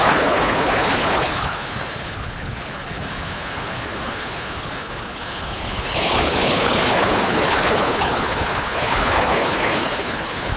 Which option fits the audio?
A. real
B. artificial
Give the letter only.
B